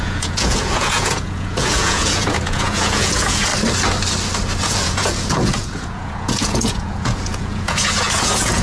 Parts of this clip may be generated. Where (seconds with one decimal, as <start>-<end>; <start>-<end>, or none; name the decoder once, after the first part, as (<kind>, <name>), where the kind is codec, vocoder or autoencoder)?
0.0-3.5 (vocoder, Vocos); 4.6-8.6